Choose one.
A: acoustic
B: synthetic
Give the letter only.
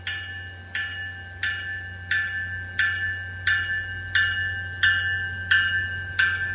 A